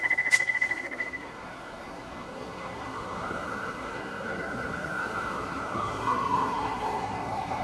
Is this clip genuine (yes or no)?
no